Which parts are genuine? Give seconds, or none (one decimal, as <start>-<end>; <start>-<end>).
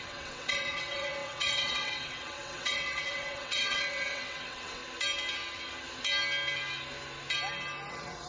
4.8-7.9